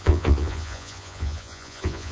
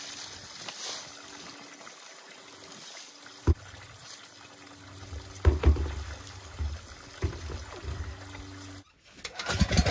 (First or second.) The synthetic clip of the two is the first